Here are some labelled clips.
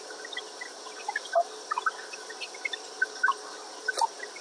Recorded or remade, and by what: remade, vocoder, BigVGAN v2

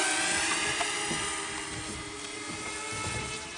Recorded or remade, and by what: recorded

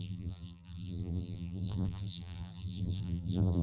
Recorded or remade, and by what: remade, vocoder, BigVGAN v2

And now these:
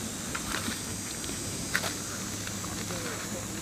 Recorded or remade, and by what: recorded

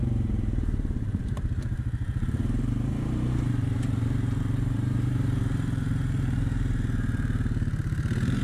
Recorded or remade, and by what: remade, vocoder, BigVGAN v2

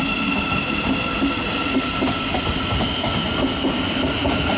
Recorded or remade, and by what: remade, vocoder, BigVGAN v2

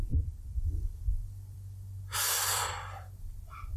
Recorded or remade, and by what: remade, vocoder, BigVGAN v2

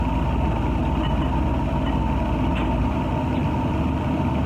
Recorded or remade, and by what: recorded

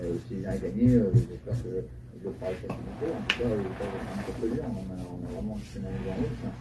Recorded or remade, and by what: recorded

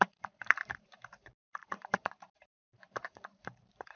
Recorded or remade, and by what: remade, vocoder, BigVGAN v2